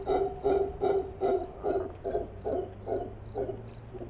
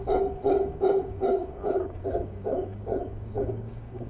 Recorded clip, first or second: first